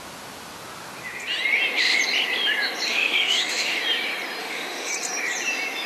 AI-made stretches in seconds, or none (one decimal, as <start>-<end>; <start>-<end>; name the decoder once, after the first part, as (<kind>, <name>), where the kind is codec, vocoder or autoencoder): 2.9-3.8 (autoencoder, DAC-VAE); 4.4-4.9